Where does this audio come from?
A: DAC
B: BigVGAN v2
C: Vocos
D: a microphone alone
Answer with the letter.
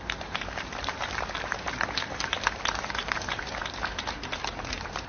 B